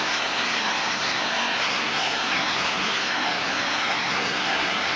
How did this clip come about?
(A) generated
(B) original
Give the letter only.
A